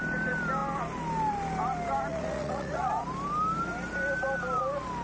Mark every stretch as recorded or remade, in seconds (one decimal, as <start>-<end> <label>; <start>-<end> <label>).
0.0-2.1 recorded; 2.1-2.9 remade; 2.9-5.0 recorded